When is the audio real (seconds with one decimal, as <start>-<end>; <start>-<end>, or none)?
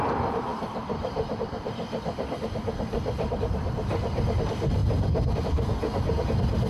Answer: 0.0-0.5; 3.7-4.8; 5.4-6.7